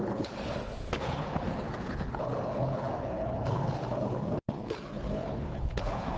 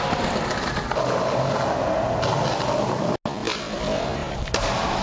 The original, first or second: second